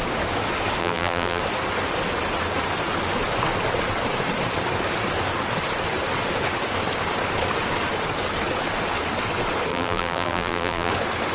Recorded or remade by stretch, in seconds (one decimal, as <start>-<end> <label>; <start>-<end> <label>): 0.0-0.8 recorded; 0.8-1.4 remade; 1.4-9.7 recorded; 9.7-10.9 remade; 10.9-11.3 recorded

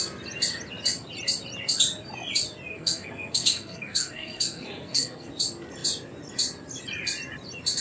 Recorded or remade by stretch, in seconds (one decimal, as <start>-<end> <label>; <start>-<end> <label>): 0.0-2.7 recorded; 2.7-5.3 remade; 5.3-7.8 recorded

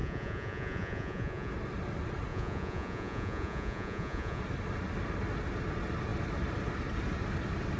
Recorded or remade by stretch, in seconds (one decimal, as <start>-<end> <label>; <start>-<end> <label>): 0.0-1.5 remade; 1.5-2.3 recorded; 2.3-4.4 remade; 4.4-7.8 recorded

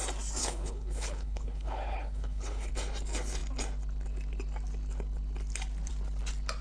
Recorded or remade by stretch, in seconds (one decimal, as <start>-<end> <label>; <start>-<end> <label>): 0.0-0.4 recorded; 0.4-2.7 remade; 2.7-6.6 recorded

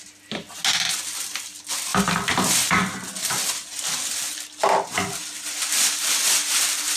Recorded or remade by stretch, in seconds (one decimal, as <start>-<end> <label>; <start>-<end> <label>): 0.0-7.0 recorded